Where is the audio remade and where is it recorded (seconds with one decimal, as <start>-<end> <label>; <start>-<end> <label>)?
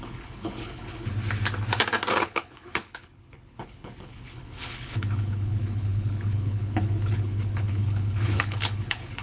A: 0.0-1.1 remade; 1.1-2.1 recorded; 2.1-9.2 remade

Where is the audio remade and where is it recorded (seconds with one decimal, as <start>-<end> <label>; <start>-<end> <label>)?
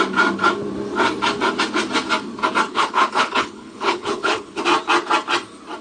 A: 0.0-2.7 recorded; 2.7-4.6 remade; 4.6-5.8 recorded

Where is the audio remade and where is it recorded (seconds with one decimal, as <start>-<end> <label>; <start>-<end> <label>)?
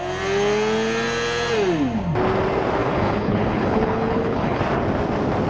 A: 0.0-2.8 recorded; 2.8-4.6 remade; 4.6-5.5 recorded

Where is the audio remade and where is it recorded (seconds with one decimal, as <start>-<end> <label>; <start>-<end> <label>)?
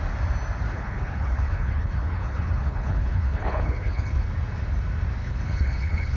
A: 0.0-0.7 recorded; 0.7-4.3 remade; 4.3-5.2 recorded; 5.2-6.2 remade